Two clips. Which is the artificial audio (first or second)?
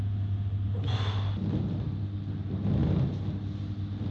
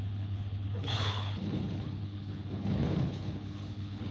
second